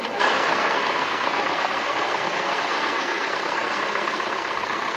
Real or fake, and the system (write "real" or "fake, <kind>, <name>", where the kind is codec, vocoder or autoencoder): fake, codec, SNAC